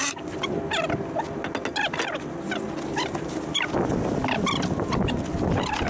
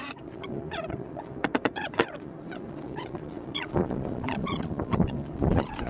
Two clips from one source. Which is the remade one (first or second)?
second